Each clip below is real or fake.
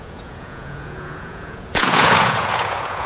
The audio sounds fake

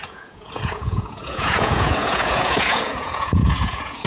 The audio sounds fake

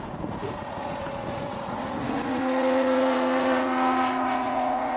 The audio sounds fake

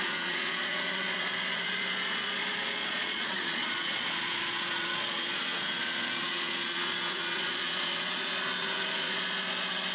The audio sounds fake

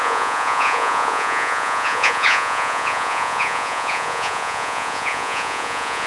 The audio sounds fake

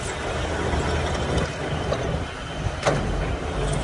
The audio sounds real